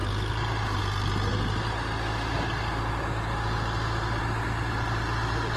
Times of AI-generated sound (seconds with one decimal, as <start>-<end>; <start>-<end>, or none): none